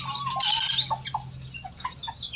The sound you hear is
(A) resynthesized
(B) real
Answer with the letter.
B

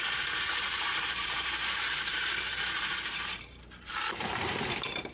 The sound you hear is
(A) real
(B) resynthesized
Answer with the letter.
B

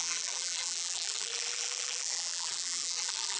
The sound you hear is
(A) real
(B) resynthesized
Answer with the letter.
B